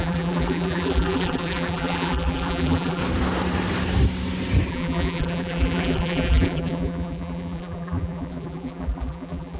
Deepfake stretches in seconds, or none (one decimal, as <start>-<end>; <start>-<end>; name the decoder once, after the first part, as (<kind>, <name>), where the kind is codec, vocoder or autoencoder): 0.0-3.0 (vocoder, BigVGAN v2); 4.7-9.6